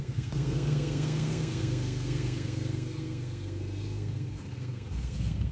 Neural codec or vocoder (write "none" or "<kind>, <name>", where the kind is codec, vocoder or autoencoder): codec, SNAC